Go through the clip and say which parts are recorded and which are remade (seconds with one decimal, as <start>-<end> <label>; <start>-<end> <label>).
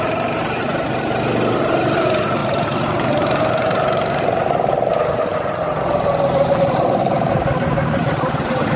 0.0-0.7 remade; 0.7-1.5 recorded; 1.5-8.8 remade